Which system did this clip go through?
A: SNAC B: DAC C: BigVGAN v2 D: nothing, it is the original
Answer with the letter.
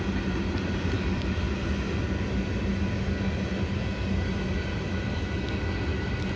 D